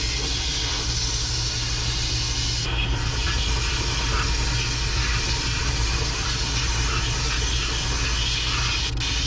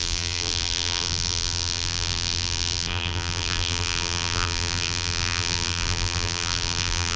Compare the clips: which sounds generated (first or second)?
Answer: second